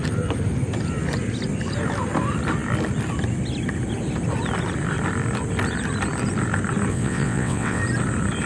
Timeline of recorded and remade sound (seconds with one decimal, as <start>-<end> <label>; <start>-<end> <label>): 0.0-6.9 recorded; 6.9-7.8 remade; 7.8-8.5 recorded